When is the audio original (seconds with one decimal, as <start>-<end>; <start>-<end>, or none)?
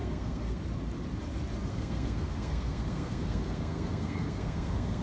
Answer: 0.6-1.7